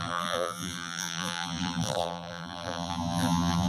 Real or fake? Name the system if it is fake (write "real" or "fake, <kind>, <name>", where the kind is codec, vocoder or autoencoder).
fake, vocoder, BigVGAN v2